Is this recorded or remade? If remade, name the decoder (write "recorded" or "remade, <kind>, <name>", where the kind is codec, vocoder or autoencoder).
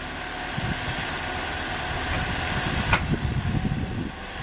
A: recorded